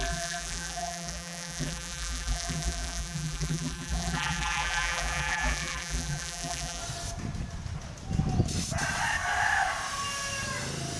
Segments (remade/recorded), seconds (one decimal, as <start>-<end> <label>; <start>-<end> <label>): 0.0-6.8 remade; 6.8-11.0 recorded